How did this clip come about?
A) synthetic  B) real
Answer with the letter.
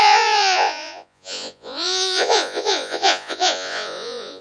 A